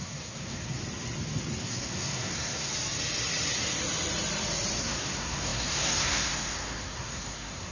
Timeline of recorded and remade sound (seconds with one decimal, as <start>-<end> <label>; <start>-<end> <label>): 0.0-0.8 remade; 0.8-1.6 recorded; 1.6-2.7 remade; 2.7-4.8 recorded; 4.8-7.7 remade